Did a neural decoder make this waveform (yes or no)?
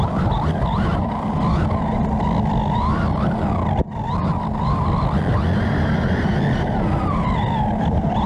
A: no